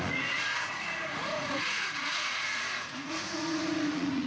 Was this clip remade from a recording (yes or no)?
yes